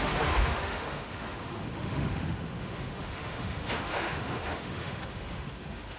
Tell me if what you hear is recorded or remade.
remade